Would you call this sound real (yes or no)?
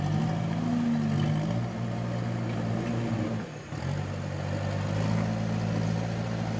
yes